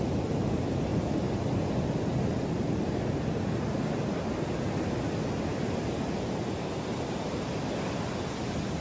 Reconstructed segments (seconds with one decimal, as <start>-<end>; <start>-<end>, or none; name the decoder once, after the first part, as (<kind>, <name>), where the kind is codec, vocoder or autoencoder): none